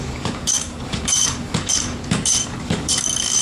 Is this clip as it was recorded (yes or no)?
no